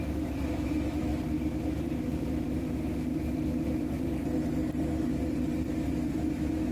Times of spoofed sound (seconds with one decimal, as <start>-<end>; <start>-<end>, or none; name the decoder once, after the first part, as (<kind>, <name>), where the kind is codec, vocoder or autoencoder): 0.0-1.1 (autoencoder, DAC-VAE); 2.2-3.1; 5.9-6.7

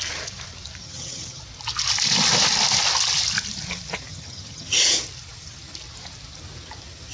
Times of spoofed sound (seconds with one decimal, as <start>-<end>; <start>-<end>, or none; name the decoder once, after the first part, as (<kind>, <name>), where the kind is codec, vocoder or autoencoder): 0.8-1.4 (vocoder, HiFi-GAN); 4.1-4.8

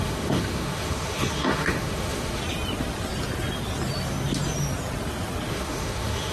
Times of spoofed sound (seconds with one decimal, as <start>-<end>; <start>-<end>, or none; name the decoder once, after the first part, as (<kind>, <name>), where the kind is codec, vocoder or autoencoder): 0.0-2.4 (autoencoder, DAC-VAE); 5.5-6.3

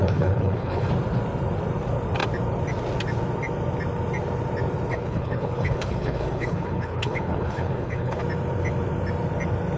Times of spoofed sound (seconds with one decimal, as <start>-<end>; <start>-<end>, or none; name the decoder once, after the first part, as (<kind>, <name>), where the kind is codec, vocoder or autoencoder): 0.0-0.9 (codec, HILCodec); 4.9-8.2